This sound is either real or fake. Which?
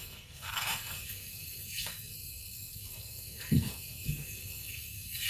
fake